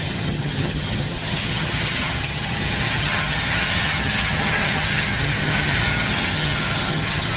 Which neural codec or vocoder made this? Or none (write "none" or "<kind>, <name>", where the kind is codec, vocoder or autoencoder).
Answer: vocoder, HiFi-GAN